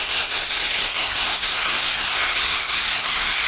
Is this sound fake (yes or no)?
yes